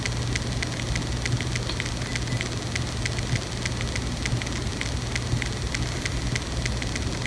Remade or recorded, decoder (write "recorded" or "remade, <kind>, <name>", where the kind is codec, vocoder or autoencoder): recorded